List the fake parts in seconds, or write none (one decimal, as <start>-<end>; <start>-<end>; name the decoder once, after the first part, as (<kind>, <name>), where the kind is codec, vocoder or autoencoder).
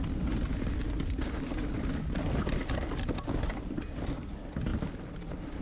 none